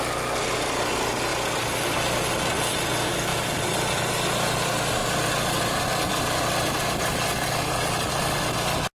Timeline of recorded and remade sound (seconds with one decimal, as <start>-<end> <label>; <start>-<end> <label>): 0.0-1.3 recorded; 1.3-2.4 remade; 2.4-3.3 recorded; 3.3-4.1 remade; 4.1-8.9 recorded